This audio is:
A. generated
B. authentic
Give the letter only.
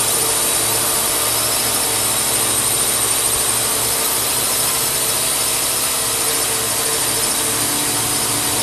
B